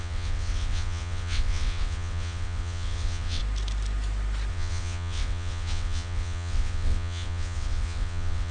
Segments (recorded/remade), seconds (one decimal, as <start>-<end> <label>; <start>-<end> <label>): 0.0-3.4 remade; 3.4-4.5 recorded; 4.5-8.5 remade